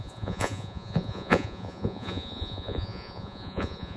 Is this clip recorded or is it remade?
remade